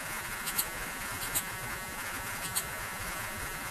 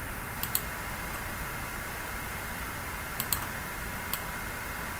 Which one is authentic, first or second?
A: second